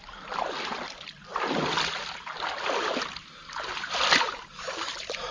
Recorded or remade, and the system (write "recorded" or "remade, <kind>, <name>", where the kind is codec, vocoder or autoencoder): recorded